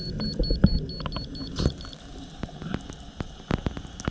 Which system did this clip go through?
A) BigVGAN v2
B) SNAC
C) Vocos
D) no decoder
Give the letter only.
D